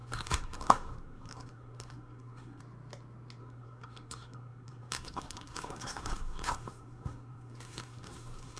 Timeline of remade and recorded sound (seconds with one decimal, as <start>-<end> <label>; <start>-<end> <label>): 0.0-2.6 remade; 2.6-3.4 recorded; 3.4-8.6 remade